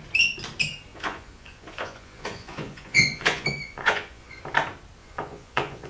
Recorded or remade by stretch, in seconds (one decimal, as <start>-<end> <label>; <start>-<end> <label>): 0.0-0.9 recorded; 0.9-4.4 remade; 4.4-5.0 recorded; 5.0-5.9 remade